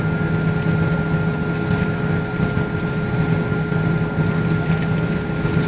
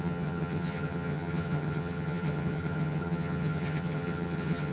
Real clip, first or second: first